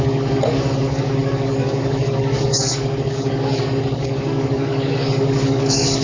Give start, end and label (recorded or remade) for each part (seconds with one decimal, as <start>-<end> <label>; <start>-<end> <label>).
0.0-6.0 remade